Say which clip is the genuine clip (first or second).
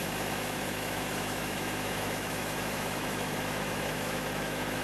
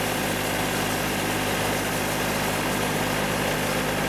second